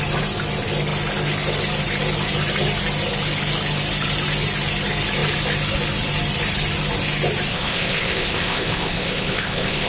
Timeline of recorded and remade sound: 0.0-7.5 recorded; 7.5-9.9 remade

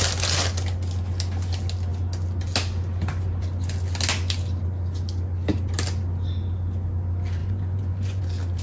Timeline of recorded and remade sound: 0.0-7.4 recorded; 7.4-8.2 remade; 8.2-8.6 recorded